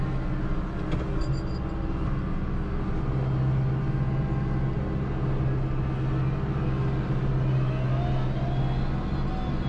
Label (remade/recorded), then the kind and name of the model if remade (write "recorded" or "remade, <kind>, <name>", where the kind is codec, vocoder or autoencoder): recorded